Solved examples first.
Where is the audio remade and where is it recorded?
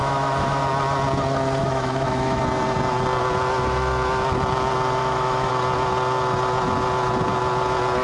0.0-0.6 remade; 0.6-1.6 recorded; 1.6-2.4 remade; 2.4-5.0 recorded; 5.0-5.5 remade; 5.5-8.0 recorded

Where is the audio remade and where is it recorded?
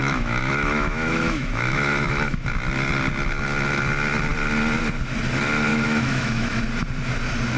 0.0-2.4 remade; 2.4-5.7 recorded; 5.7-6.6 remade; 6.6-7.6 recorded